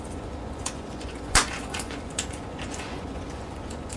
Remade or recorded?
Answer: remade